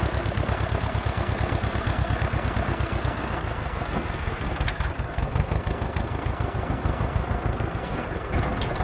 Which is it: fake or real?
fake